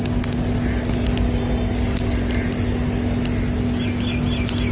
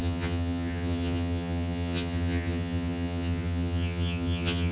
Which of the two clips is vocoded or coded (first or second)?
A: second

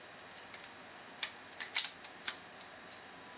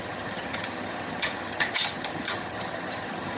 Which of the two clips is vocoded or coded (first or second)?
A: second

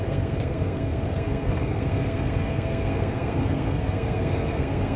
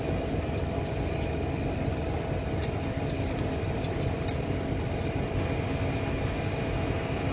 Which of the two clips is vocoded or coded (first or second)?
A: first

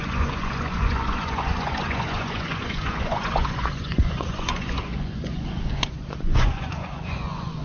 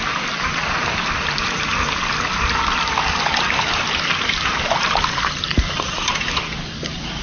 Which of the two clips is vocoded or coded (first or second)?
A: first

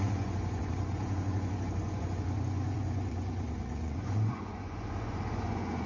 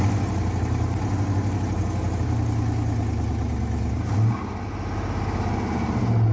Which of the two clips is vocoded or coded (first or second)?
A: first